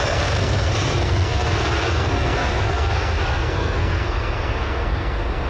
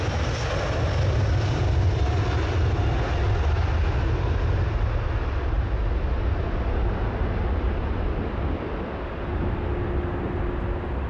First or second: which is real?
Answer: second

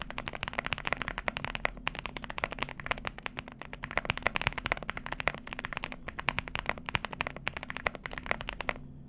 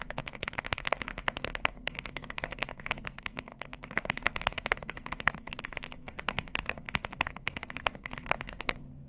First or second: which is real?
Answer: first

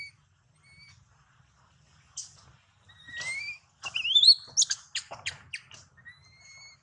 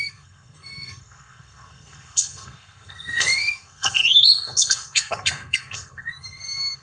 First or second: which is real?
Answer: first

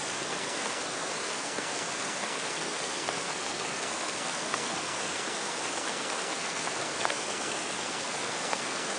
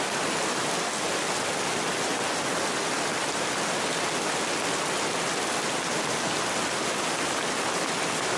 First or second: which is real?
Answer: second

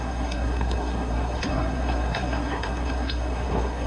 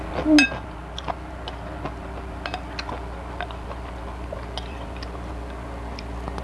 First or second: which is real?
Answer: second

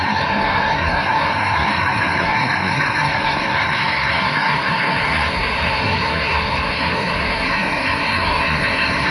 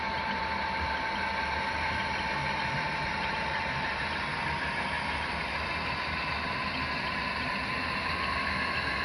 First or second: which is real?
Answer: second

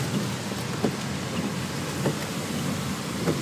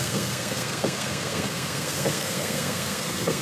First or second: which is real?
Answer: first